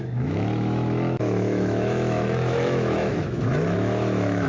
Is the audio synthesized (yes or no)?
yes